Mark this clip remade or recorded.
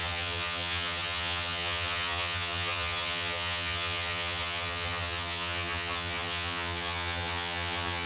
remade